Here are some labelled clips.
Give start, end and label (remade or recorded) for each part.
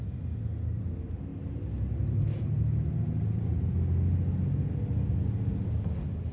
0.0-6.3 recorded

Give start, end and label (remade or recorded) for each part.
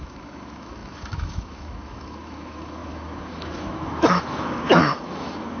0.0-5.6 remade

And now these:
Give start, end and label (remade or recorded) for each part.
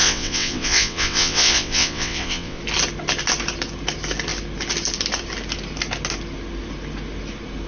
0.0-2.6 remade; 2.6-7.7 recorded